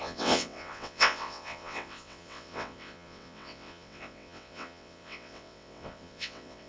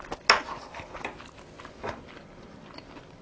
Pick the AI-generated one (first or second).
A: first